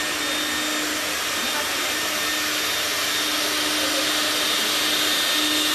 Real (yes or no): yes